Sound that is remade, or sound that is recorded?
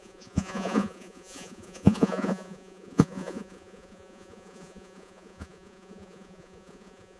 remade